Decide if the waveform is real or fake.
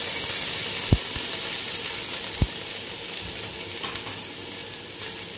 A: real